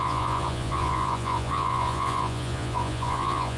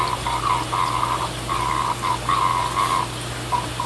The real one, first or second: second